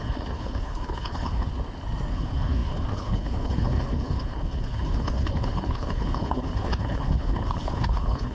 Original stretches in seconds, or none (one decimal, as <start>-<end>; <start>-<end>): 1.5-2.1